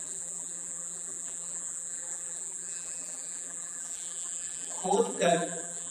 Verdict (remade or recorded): remade